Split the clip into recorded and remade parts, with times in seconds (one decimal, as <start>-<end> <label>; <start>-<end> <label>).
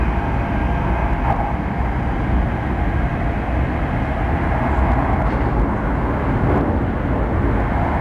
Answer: 0.0-8.0 recorded